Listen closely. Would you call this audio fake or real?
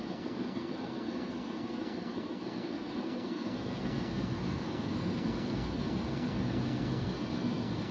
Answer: fake